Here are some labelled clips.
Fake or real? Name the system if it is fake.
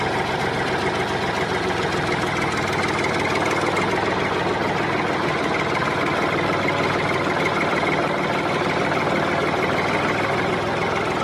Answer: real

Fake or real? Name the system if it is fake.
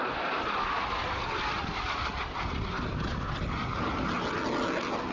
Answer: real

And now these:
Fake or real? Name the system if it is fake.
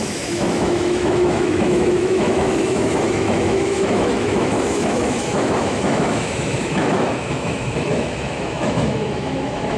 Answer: fake, autoencoder, DAC-VAE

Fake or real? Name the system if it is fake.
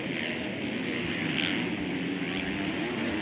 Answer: real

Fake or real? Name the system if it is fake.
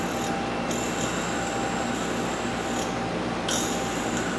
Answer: real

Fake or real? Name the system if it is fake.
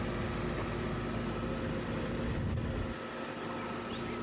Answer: real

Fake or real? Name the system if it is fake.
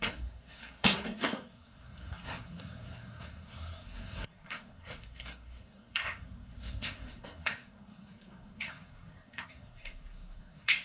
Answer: fake, codec, SNAC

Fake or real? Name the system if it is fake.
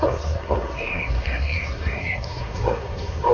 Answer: fake, codec, SNAC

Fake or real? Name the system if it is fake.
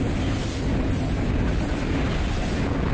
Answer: real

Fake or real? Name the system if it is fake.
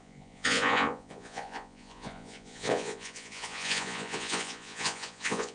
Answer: fake, vocoder, Vocos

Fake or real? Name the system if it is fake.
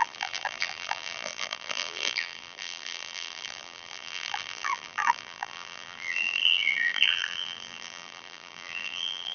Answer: fake, vocoder, BigVGAN v2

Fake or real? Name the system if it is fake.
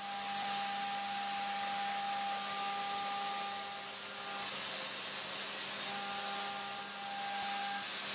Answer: real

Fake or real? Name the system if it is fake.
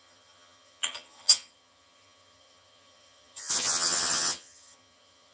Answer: fake, vocoder, HiFi-GAN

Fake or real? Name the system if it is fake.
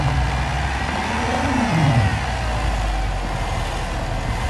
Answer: real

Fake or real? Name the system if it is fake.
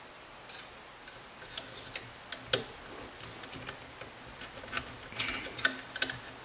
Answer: real